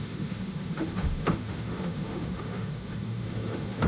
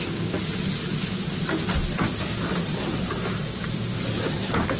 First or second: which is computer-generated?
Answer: first